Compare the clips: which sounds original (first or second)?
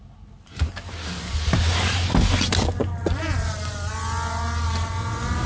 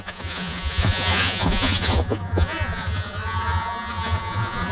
first